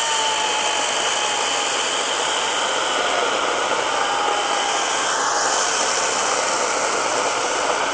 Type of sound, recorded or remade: recorded